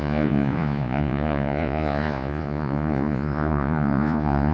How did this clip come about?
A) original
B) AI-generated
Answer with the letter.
B